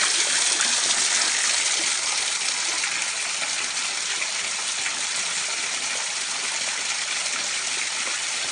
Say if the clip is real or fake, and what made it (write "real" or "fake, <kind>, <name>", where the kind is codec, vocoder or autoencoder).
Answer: real